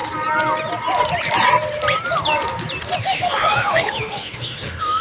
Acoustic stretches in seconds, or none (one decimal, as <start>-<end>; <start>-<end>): 0.0-3.0